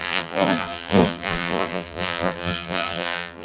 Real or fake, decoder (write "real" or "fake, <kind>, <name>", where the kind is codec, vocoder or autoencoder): fake, vocoder, BigVGAN v2